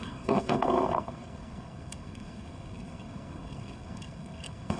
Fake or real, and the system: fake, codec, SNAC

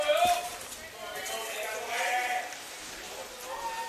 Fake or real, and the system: real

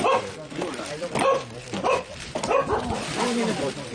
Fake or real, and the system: fake, vocoder, BigVGAN v2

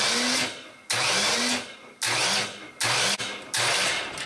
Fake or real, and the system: real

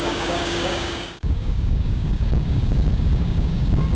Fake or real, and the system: fake, codec, DAC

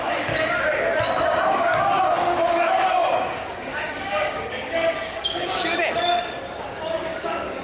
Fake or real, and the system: fake, codec, DAC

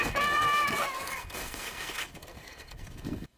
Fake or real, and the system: fake, codec, SNAC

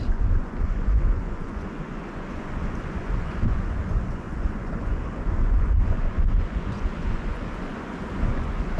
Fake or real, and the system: fake, vocoder, Vocos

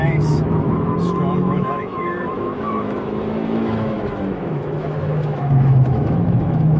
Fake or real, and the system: fake, autoencoder, DAC-VAE